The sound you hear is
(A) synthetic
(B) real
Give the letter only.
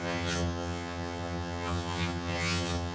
A